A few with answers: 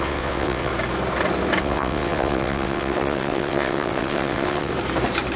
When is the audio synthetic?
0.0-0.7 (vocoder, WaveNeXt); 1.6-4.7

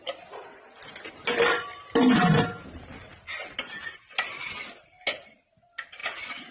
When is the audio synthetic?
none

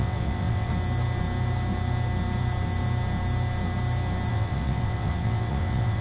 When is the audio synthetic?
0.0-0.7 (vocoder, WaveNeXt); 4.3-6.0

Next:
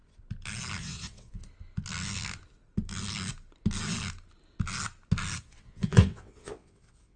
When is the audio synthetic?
0.8-1.4 (vocoder, WaveNeXt); 5.4-7.2

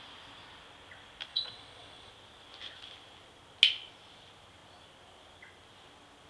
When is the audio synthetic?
1.3-2.1 (vocoder, WaveNeXt)

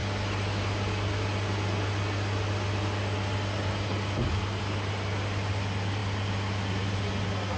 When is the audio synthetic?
none